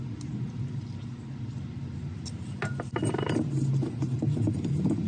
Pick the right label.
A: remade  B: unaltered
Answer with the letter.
B